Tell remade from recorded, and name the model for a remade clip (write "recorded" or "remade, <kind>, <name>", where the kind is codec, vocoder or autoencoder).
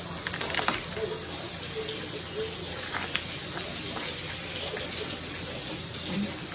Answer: recorded